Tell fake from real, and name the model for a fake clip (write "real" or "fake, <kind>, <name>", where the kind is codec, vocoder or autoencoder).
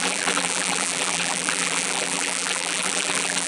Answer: fake, vocoder, BigVGAN v2